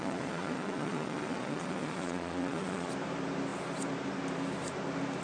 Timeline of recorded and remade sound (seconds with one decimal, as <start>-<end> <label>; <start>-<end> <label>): 0.0-2.9 remade; 2.9-5.2 recorded

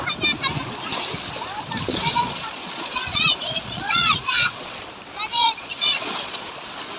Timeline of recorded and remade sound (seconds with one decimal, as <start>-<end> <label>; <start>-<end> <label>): 0.0-1.9 recorded; 1.9-4.8 remade; 4.8-5.3 recorded; 5.3-6.5 remade; 6.5-7.0 recorded

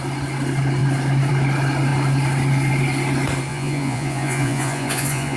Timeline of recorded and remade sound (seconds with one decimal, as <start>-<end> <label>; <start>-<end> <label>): 0.0-3.5 recorded; 3.5-5.4 remade

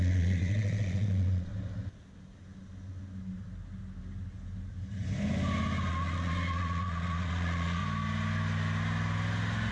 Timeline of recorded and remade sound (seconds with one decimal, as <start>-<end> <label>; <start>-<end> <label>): 0.0-1.5 remade; 1.5-5.9 recorded; 5.9-7.8 remade; 7.8-9.7 recorded

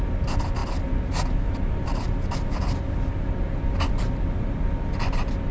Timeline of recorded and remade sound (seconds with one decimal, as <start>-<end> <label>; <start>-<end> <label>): 0.0-5.5 recorded

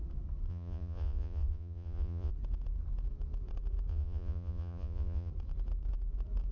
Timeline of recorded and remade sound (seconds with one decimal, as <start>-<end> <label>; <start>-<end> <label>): 0.0-0.5 recorded; 0.5-2.3 remade; 2.3-3.9 recorded; 3.9-5.3 remade; 5.3-6.5 recorded

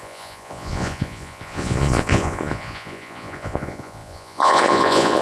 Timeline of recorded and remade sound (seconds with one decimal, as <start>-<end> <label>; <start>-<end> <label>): 0.0-5.2 remade

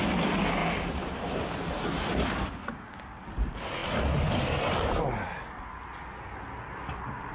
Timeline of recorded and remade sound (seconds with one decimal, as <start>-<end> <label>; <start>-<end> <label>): 0.0-7.3 recorded